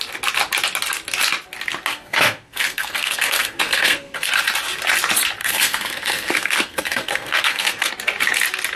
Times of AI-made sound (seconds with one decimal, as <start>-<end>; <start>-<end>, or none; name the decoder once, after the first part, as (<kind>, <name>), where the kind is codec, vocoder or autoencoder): 1.9-4.3 (codec, SNAC); 5.4-7.9